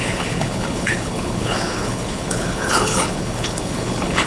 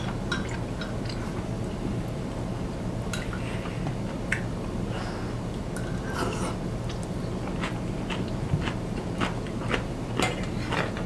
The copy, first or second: first